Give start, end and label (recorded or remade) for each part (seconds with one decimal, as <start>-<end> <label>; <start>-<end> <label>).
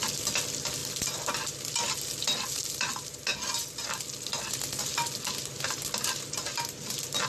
0.0-7.3 recorded